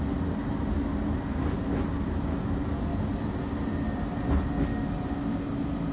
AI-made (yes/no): no